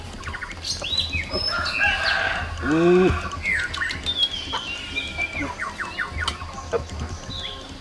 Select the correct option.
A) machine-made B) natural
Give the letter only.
B